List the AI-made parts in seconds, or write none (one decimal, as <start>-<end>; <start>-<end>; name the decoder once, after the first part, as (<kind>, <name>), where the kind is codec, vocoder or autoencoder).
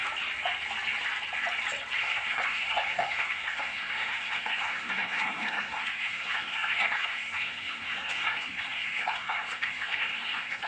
2.0-10.7 (codec, SNAC)